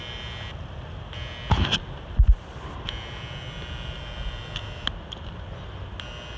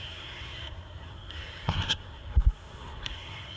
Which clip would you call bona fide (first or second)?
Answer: first